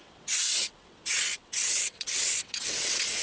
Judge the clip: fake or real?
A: fake